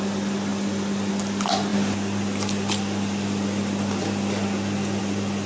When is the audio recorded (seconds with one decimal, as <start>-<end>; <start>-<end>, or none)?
0.0-5.5